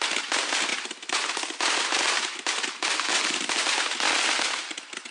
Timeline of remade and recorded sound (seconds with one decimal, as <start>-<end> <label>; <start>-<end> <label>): 0.0-5.1 recorded